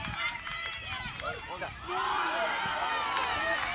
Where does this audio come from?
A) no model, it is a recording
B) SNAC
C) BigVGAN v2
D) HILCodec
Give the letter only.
A